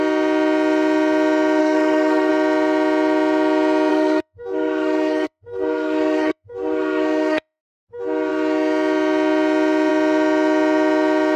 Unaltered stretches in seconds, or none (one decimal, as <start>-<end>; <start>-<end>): 0.0-1.6; 2.3-3.9; 7.6-11.4